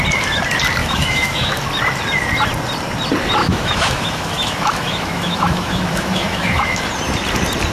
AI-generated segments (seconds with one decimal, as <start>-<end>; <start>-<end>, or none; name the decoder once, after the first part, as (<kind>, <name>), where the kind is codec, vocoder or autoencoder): 0.8-1.6 (autoencoder, DAC-VAE); 3.4-6.8